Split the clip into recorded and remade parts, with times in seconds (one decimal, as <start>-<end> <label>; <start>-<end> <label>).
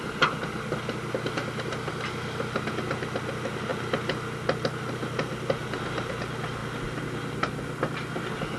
0.0-8.6 recorded